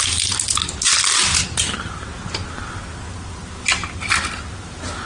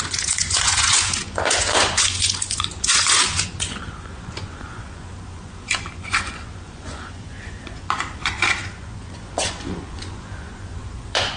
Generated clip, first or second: second